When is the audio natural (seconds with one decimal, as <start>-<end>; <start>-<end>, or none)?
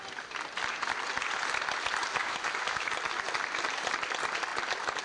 0.0-2.2; 2.9-5.0